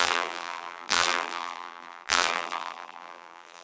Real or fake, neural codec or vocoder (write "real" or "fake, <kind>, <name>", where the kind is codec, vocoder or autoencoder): fake, vocoder, BigVGAN v2